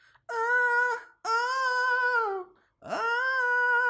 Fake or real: real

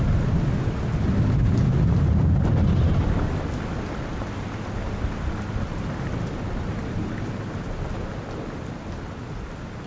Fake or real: real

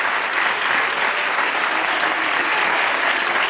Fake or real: real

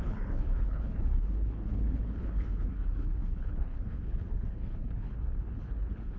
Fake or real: fake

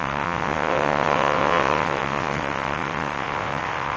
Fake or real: fake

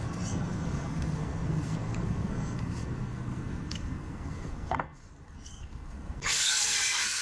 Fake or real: fake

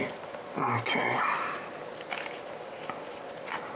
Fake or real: real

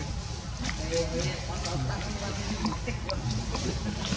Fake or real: real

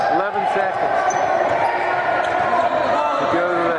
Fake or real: real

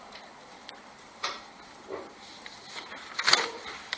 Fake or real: fake